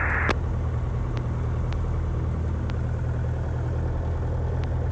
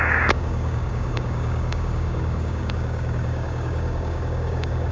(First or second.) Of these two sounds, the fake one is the second